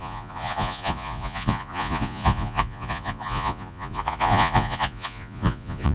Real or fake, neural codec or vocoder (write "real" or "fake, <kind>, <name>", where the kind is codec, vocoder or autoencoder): fake, vocoder, Vocos